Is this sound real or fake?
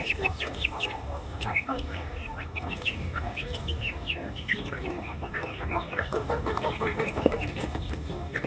fake